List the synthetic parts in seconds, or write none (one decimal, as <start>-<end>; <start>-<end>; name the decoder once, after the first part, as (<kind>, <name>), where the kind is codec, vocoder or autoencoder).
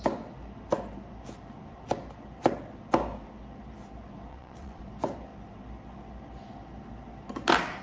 4.3-4.8 (vocoder, WaveNeXt)